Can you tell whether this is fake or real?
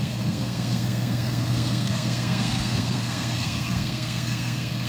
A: fake